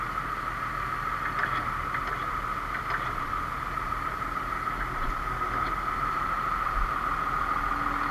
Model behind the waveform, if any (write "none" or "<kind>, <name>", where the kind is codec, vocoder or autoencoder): none